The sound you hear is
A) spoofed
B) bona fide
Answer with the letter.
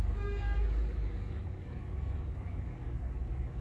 A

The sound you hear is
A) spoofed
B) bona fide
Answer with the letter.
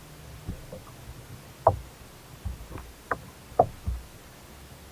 B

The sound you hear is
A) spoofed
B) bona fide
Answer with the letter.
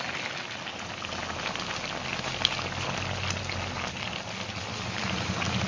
B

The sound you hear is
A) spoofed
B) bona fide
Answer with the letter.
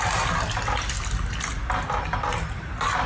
B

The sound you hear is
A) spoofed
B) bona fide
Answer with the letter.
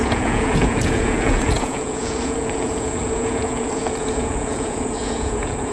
A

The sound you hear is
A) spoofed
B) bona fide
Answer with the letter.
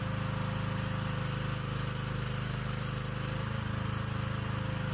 B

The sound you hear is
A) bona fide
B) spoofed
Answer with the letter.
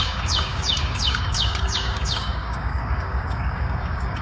B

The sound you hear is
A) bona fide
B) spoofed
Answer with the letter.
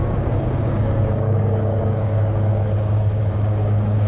B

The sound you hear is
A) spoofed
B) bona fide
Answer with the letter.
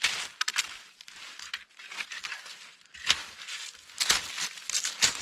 B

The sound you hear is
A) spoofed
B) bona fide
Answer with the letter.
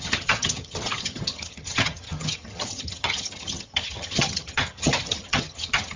A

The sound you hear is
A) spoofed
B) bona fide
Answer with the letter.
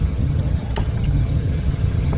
A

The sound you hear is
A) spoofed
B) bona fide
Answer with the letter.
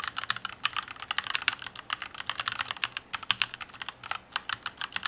B